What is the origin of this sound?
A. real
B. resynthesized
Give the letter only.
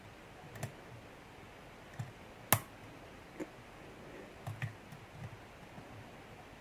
A